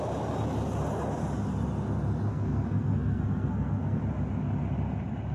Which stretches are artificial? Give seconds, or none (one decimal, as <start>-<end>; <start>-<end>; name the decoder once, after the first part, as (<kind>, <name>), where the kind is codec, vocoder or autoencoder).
2.3-4.0 (codec, SNAC)